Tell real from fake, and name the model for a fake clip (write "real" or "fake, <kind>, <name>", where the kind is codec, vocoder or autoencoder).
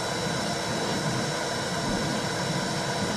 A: real